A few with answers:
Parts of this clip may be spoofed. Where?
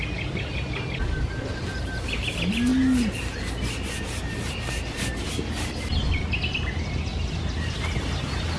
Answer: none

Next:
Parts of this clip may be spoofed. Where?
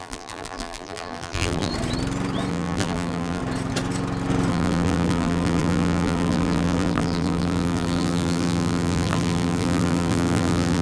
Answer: 0.0-1.7; 2.5-3.4; 4.5-10.8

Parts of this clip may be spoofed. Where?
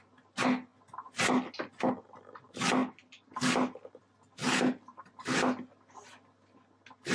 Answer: 4.4-5.0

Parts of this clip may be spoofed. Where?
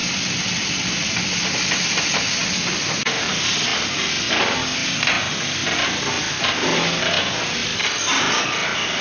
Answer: none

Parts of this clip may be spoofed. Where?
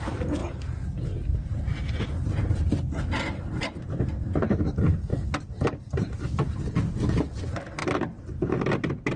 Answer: 5.1-6.6; 7.8-8.7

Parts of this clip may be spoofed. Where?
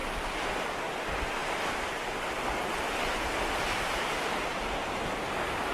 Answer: none